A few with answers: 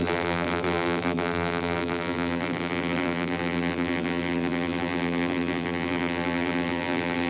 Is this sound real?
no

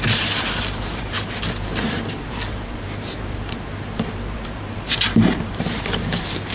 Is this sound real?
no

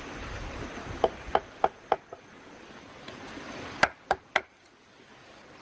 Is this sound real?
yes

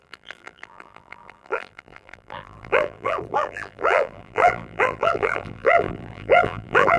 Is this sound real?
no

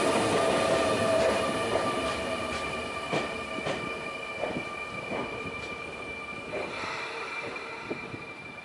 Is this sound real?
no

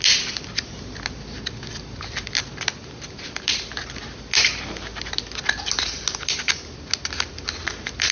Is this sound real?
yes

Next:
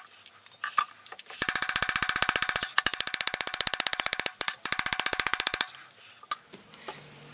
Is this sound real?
no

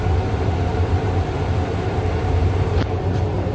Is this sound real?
no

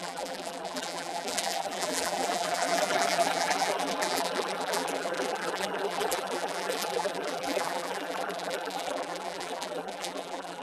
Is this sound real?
no